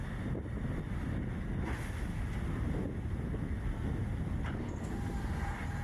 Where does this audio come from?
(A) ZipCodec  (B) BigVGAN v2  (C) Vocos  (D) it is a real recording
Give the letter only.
D